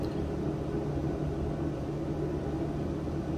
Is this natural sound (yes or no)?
yes